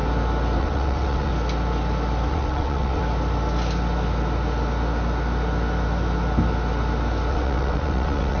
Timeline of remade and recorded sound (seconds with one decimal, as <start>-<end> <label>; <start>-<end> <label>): 0.0-0.6 recorded; 0.6-1.3 remade; 1.3-2.3 recorded; 2.3-3.0 remade; 3.0-7.3 recorded; 7.3-8.4 remade